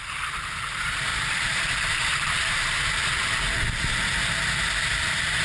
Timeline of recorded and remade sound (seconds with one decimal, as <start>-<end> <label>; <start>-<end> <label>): 0.0-1.1 recorded; 1.1-2.6 remade; 2.6-5.4 recorded